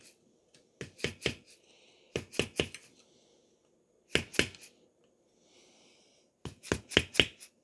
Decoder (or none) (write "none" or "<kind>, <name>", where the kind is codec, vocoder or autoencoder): none